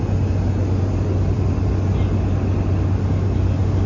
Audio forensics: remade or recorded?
recorded